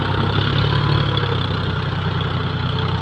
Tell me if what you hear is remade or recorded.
recorded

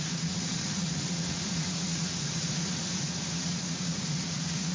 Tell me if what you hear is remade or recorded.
remade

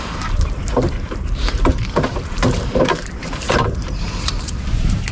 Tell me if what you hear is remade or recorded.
remade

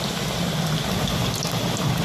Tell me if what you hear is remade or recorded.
recorded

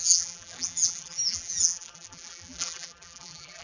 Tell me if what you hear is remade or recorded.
remade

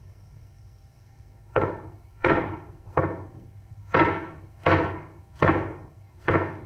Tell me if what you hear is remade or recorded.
remade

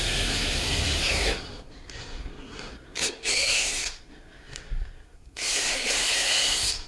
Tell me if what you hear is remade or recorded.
remade